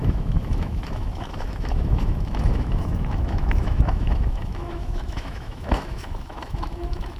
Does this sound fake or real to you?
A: fake